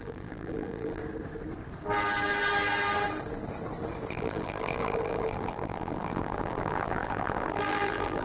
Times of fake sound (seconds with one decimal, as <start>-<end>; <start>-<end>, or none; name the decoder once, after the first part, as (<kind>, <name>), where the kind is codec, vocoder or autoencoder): 0.0-1.0 (vocoder, BigVGAN v2); 4.1-8.2